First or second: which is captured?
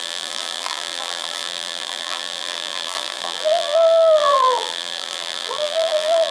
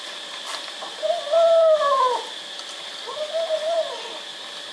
second